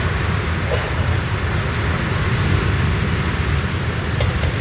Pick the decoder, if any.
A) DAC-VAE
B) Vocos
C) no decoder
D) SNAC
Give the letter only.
C